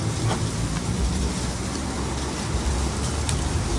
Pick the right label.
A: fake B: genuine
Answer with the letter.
A